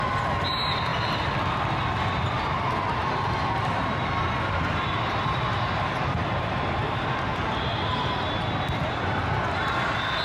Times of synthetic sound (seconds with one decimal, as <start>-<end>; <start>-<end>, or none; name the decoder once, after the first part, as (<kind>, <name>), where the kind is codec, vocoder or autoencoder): 0.9-1.4 (vocoder, BigVGAN v2); 3.0-4.0